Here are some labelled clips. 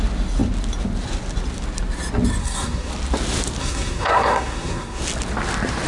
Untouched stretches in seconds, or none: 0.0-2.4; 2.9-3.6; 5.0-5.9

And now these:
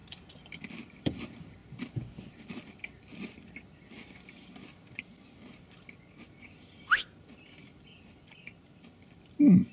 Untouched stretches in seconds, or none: 1.6-2.2

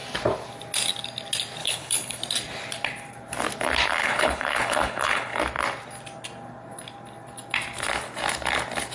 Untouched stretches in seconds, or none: 0.0-1.6; 2.2-4.0; 5.4-8.9

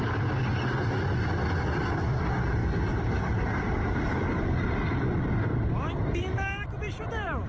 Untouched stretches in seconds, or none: 0.0-2.6; 4.7-6.3

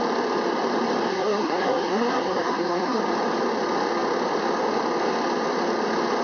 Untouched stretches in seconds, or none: 0.0-1.1; 3.0-6.2

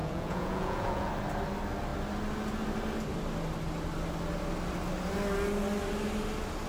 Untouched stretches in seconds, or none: 1.1-6.7

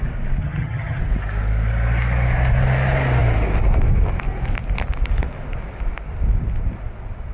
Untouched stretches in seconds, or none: 0.0-0.4; 1.0-7.3

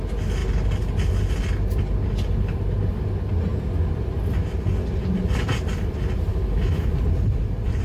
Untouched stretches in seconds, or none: 0.0-6.3; 6.9-7.8